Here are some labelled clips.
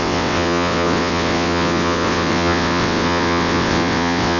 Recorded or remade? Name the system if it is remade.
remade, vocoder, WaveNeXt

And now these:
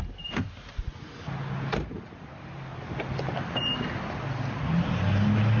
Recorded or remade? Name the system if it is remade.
recorded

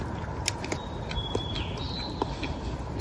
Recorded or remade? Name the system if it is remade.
recorded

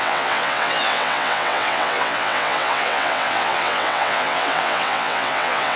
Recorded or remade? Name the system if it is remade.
remade, vocoder, WaveNeXt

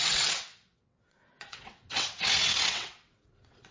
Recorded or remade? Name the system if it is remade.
remade, vocoder, WaveNeXt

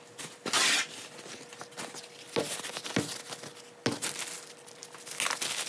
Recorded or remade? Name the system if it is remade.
recorded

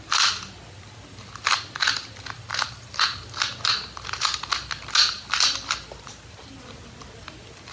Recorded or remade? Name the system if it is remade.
recorded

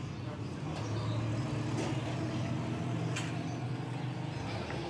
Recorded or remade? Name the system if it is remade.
recorded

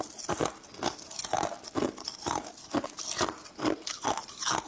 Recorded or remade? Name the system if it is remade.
recorded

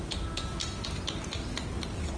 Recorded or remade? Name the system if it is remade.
recorded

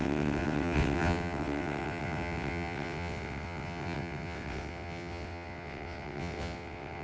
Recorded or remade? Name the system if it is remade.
remade, vocoder, WaveNeXt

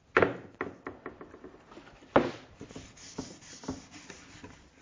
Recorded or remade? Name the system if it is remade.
recorded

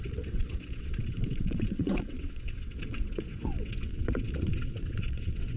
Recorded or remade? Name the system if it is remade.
remade, vocoder, WaveNeXt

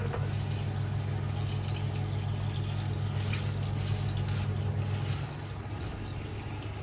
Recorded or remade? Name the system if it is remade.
recorded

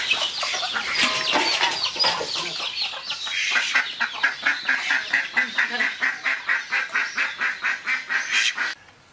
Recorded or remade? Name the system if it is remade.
recorded